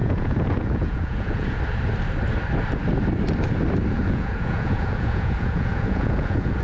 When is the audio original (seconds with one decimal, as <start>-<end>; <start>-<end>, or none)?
1.6-3.9